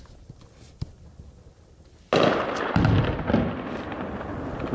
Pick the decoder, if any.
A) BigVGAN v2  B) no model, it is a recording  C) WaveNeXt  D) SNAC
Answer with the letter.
B